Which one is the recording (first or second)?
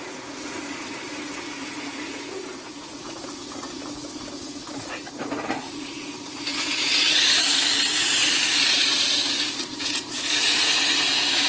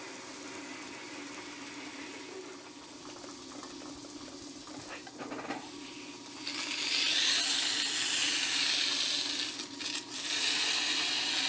second